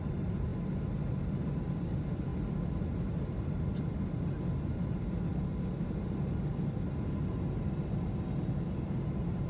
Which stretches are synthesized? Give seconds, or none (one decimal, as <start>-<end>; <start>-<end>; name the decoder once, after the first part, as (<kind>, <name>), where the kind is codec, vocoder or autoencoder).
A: none